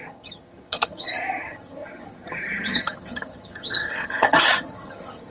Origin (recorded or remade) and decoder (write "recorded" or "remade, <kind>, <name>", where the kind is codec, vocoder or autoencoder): remade, vocoder, HiFi-GAN